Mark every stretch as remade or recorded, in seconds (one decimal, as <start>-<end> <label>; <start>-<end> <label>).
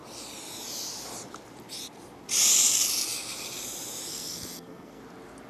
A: 0.0-4.1 recorded; 4.1-5.0 remade; 5.0-5.5 recorded